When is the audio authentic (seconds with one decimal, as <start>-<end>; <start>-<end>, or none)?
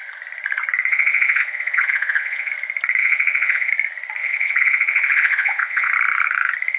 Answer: 0.0-0.9; 2.5-3.0; 3.7-4.2; 5.9-6.8